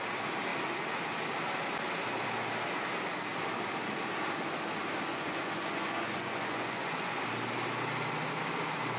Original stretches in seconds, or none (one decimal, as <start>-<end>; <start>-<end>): 0.0-5.1; 7.2-9.0